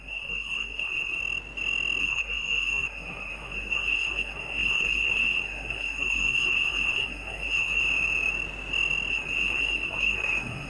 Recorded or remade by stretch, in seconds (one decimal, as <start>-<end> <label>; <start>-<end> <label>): 0.0-1.2 remade; 1.2-2.0 recorded; 2.0-7.8 remade; 7.8-9.1 recorded; 9.1-10.7 remade

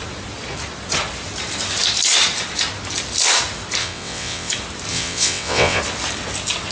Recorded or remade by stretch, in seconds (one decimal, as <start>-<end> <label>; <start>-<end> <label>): 0.0-3.8 recorded; 3.8-4.5 remade; 4.5-4.9 recorded; 4.9-5.8 remade; 5.8-6.7 recorded

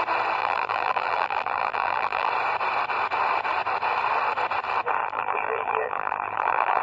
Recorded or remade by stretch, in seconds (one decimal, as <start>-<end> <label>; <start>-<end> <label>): 0.0-0.4 recorded; 0.4-2.3 remade; 2.3-5.0 recorded; 5.0-6.8 remade

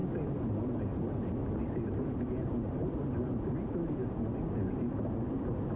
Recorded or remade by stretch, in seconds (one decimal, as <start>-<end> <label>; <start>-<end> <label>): 0.0-5.8 recorded

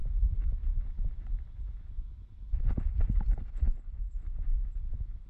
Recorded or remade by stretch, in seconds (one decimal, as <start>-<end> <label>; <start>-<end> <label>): 0.0-5.3 recorded